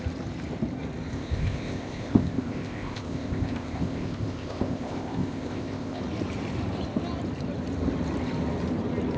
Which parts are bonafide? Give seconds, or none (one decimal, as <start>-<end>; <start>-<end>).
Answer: 0.0-1.1; 6.0-9.2